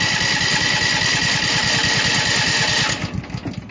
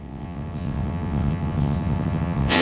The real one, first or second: first